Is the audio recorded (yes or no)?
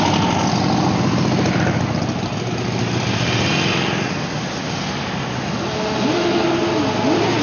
yes